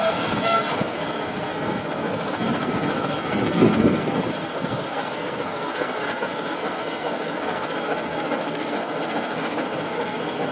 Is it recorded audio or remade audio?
remade